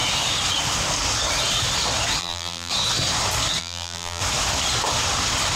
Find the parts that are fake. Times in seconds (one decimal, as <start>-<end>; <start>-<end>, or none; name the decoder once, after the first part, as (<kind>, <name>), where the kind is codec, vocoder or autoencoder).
2.2-2.7 (vocoder, BigVGAN v2); 3.6-4.2